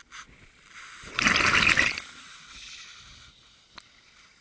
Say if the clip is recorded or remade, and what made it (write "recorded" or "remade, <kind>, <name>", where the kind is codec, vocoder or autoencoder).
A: recorded